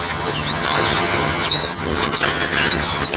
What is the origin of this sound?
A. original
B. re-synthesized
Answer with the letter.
B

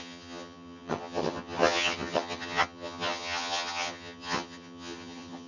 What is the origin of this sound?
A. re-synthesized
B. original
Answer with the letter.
A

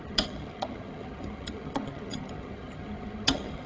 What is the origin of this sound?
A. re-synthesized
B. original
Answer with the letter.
A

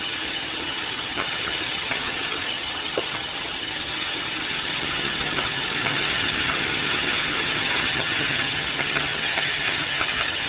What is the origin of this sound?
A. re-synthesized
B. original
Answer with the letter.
A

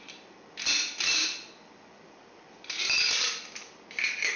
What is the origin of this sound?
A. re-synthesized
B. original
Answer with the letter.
B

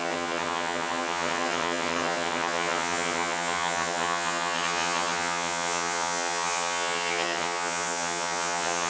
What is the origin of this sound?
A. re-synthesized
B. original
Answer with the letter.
A